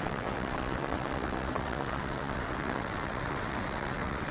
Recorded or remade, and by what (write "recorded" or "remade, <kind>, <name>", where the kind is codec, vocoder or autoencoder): remade, vocoder, WaveNeXt